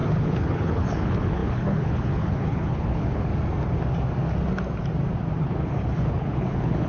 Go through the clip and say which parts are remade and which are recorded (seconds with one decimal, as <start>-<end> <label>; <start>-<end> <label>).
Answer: 0.0-3.3 remade; 3.3-5.4 recorded; 5.4-6.9 remade